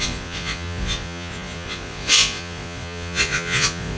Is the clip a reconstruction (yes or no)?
yes